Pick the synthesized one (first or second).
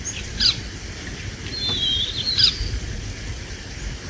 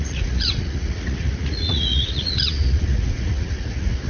second